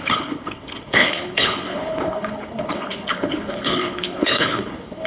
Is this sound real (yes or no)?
no